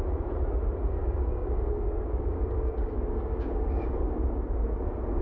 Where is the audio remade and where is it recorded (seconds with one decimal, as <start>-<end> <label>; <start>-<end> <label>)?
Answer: 0.0-1.0 recorded; 1.0-4.1 remade; 4.1-5.2 recorded